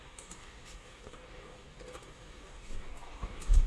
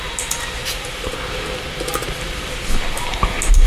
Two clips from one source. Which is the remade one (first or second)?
first